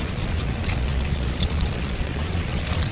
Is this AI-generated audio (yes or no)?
yes